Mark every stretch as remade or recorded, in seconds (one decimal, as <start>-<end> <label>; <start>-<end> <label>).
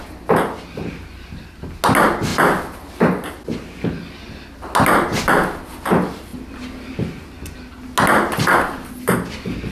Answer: 0.0-9.7 recorded